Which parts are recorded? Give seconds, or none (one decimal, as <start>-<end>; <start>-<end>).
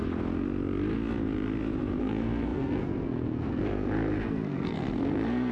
0.0-2.0